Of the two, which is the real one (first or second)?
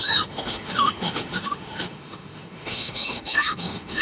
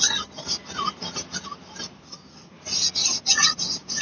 second